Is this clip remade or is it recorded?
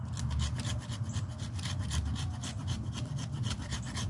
recorded